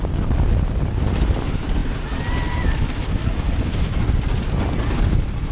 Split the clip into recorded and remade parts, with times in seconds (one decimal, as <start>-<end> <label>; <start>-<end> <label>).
0.0-5.5 recorded